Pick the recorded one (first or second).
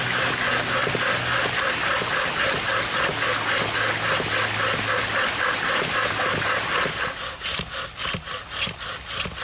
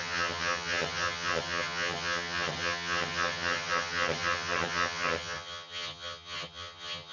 first